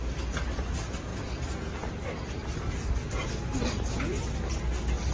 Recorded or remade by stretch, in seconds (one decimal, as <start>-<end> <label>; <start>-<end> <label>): 0.0-2.4 remade; 2.4-3.3 recorded; 3.3-4.5 remade; 4.5-5.1 recorded